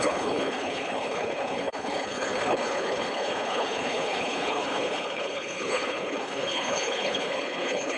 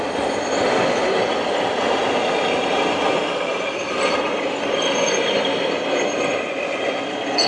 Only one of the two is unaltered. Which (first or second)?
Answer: second